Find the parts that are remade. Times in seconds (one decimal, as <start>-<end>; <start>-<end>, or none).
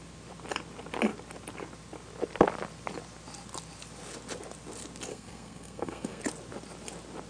5.1-6.2